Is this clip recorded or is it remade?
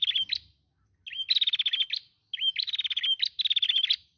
recorded